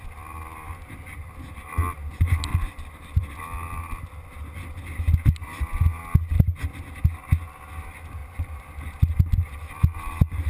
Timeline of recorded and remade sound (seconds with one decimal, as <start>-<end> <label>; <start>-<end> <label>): 0.0-2.5 recorded; 2.5-3.3 remade; 3.3-8.2 recorded; 8.2-9.7 remade; 9.7-10.5 recorded